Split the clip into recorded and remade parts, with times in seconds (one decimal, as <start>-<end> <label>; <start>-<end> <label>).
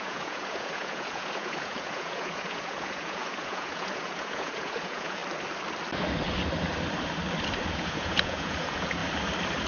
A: 0.0-5.2 remade; 5.2-7.7 recorded; 7.7-9.0 remade; 9.0-9.7 recorded